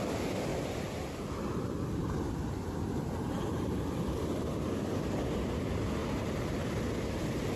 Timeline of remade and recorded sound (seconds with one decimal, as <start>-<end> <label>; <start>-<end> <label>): 0.0-0.5 recorded; 0.5-5.1 remade; 5.1-6.0 recorded; 6.0-7.1 remade; 7.1-7.6 recorded